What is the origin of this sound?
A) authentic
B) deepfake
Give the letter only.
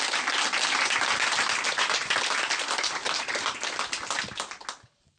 A